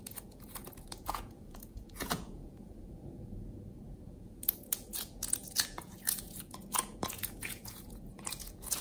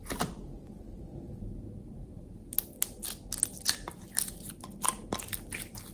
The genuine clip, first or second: second